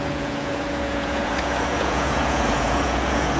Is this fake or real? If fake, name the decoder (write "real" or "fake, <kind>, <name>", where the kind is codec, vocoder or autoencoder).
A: fake, vocoder, Vocos